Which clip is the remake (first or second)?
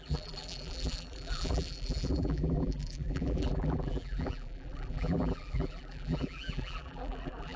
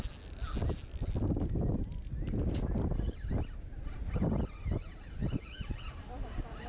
first